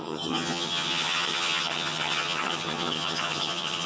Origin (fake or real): fake